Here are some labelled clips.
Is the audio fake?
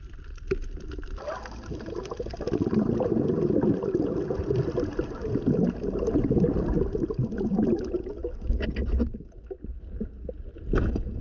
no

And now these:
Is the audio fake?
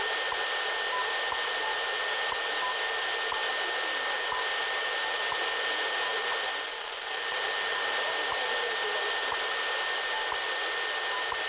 no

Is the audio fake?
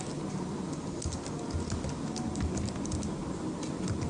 no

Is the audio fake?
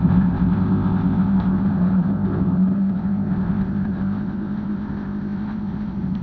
yes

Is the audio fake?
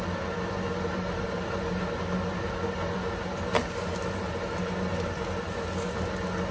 no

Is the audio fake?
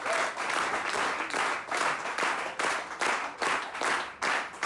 no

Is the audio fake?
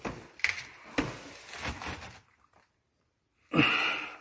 no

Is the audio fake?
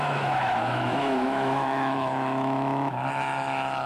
yes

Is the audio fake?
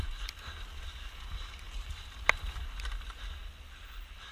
no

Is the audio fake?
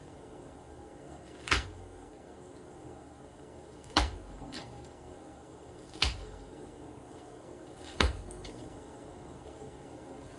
yes